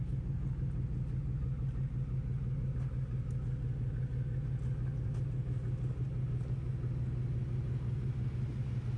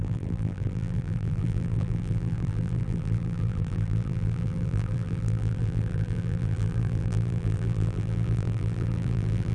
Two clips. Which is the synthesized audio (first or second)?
second